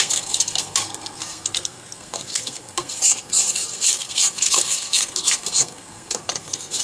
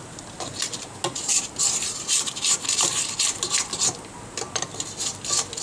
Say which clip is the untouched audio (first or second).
second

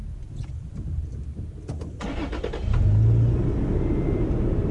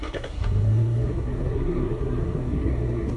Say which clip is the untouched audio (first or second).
first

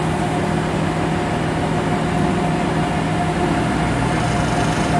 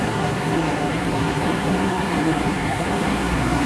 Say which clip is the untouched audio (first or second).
first